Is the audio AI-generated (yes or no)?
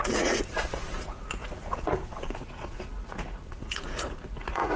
yes